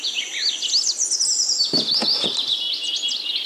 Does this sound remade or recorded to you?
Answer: recorded